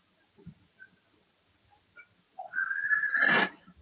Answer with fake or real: real